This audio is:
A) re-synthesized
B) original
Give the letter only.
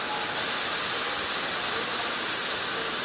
B